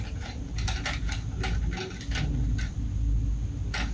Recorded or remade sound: recorded